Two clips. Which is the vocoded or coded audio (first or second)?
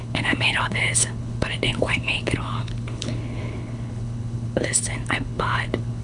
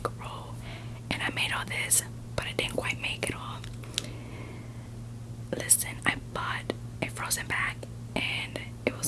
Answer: first